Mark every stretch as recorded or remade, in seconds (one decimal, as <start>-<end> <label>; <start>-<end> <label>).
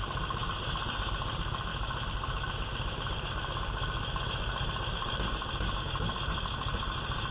0.0-7.3 recorded